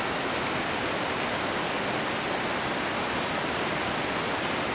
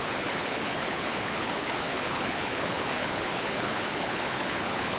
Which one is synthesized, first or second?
second